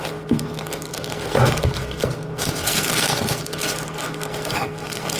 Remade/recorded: remade